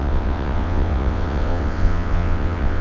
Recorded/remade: remade